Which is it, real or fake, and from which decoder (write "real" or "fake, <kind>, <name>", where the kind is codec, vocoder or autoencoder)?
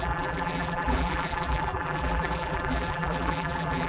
fake, vocoder, BigVGAN v2